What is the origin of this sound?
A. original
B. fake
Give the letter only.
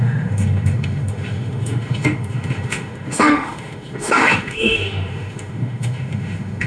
B